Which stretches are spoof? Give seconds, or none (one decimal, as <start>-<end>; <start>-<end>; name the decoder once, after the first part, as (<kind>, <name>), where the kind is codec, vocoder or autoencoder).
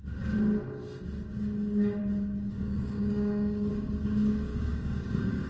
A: 2.0-3.7 (codec, DAC); 4.5-5.5